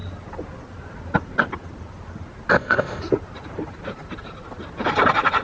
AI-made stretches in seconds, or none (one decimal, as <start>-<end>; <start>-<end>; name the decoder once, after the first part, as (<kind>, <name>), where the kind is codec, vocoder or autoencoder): 2.5-3.0 (codec, ZipCodec)